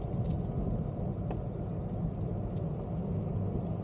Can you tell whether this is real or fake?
real